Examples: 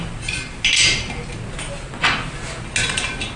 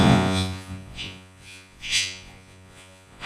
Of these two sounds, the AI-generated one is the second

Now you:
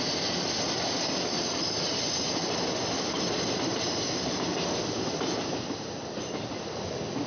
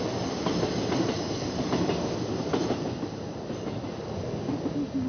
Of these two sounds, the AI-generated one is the first